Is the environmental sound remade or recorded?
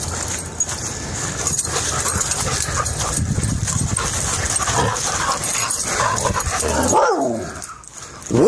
recorded